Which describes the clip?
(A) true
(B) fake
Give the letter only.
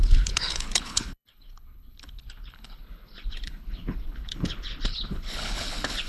B